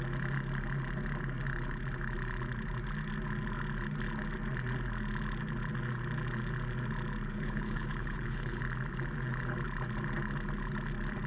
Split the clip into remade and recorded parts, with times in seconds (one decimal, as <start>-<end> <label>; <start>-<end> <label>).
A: 0.0-7.3 recorded; 7.3-8.6 remade; 8.6-11.3 recorded